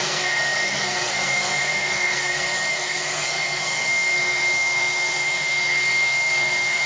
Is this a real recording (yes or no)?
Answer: no